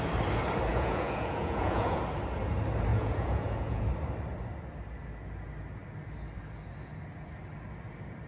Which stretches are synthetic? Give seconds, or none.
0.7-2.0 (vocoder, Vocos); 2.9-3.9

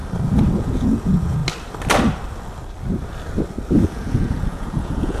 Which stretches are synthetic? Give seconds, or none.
0.6-1.4 (vocoder, Vocos); 3.8-5.2

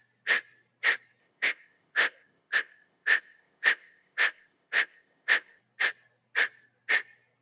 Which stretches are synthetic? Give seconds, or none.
1.2-5.6 (codec, ZipCodec)

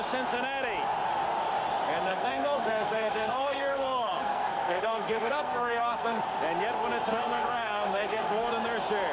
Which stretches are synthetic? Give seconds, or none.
2.1-6.2 (codec, SNAC); 7.1-8.5

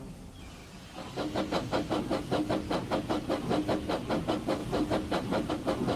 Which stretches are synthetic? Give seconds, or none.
4.6-5.5 (vocoder, BigVGAN v2)

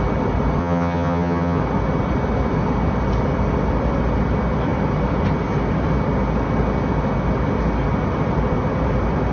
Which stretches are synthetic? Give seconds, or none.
0.6-1.6 (vocoder, HiFi-GAN)

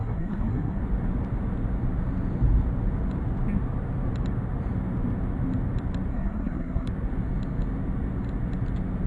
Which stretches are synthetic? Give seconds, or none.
0.0-0.8 (codec, SNAC); 6.1-6.9

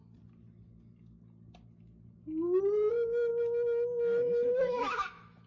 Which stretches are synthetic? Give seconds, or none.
2.9-5.5 (autoencoder, DAC-VAE)